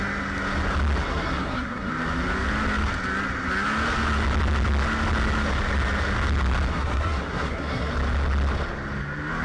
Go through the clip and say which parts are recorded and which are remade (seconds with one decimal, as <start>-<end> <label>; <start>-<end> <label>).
0.0-1.1 recorded; 1.1-1.9 remade; 1.9-6.7 recorded; 6.7-7.9 remade; 7.9-9.4 recorded